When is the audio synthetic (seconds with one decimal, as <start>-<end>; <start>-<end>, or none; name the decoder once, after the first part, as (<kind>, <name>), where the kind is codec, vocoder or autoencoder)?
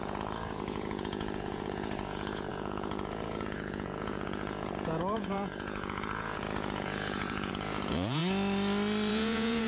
0.0-8.2 (vocoder, Vocos); 9.1-9.7